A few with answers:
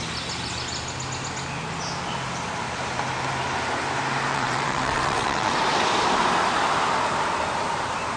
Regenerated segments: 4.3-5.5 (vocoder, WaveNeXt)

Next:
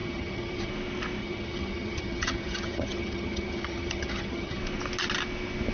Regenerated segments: 0.0-0.7 (vocoder, HiFi-GAN); 1.2-4.6

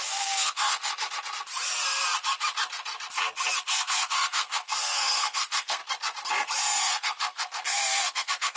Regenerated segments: 0.0-0.9 (codec, SNAC); 3.7-5.8; 6.8-8.6

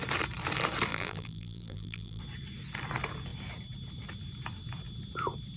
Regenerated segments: 0.9-2.2 (vocoder, BigVGAN v2)

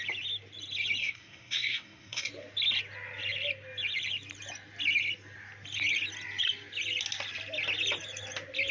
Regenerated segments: 1.0-2.3 (codec, SNAC)

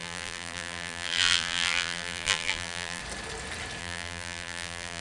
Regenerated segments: 0.0-3.0 (vocoder, BigVGAN v2); 3.8-5.0

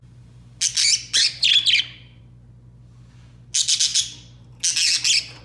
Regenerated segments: none